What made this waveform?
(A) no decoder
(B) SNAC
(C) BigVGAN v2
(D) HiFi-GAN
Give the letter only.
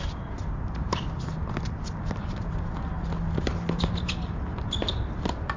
A